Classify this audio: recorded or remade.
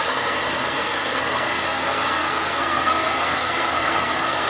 remade